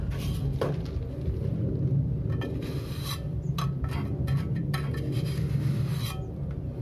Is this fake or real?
real